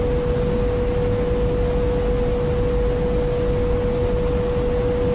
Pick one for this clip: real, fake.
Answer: real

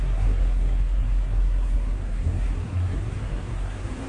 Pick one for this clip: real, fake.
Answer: fake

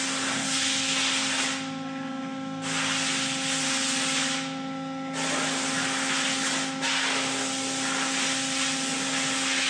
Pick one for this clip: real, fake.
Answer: real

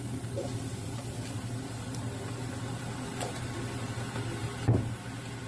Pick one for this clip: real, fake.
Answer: real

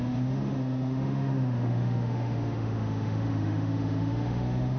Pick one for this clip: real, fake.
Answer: fake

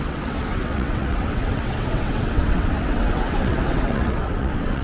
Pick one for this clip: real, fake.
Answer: fake